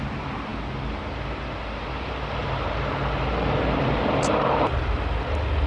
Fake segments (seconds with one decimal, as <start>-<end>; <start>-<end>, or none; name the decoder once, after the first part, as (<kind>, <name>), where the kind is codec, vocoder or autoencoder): 2.4-4.8 (vocoder, BigVGAN v2)